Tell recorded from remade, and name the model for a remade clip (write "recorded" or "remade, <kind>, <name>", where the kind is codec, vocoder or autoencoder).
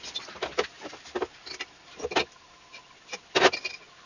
recorded